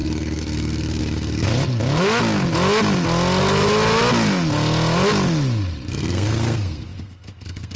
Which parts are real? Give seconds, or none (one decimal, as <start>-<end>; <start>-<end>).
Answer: 1.5-5.9